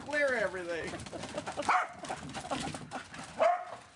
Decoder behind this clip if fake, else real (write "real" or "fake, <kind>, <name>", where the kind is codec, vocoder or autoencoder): real